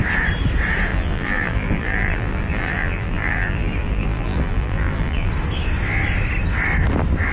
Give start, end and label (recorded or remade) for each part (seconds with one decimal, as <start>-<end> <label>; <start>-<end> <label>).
0.0-0.9 recorded; 0.9-5.3 remade; 5.3-7.3 recorded